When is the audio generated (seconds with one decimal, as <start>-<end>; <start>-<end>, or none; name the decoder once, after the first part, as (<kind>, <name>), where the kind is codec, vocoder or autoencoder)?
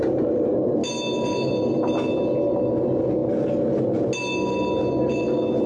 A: none